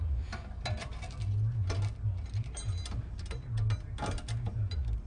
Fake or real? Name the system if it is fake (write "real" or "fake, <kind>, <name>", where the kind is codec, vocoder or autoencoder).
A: real